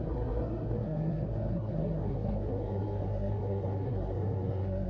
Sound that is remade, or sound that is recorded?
remade